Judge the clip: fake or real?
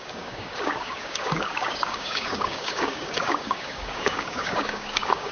fake